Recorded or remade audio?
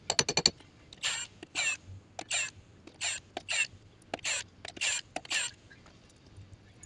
recorded